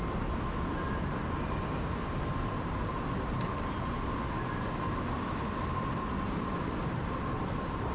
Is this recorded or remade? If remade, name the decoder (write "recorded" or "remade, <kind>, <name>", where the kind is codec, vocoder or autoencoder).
recorded